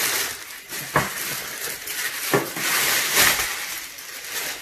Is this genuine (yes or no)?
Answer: yes